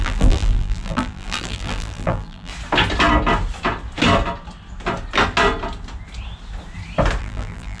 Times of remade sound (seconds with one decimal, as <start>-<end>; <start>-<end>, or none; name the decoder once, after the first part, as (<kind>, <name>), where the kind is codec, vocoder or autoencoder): 0.0-2.5 (vocoder, BigVGAN v2); 7.2-7.8